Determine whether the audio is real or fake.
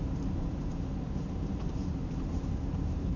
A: fake